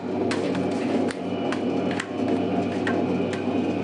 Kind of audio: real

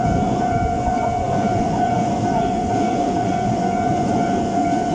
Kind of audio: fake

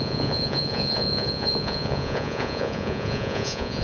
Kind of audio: fake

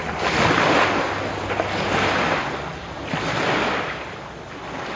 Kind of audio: real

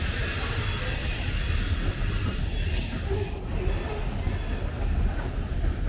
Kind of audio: real